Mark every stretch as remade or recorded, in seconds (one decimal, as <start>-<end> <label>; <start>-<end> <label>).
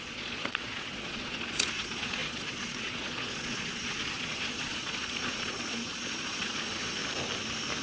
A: 0.0-7.0 remade; 7.0-7.8 recorded